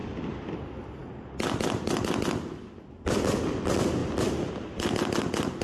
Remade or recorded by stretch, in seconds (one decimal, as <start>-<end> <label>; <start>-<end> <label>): 0.0-5.6 recorded